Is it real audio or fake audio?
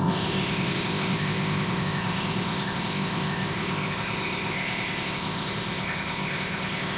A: fake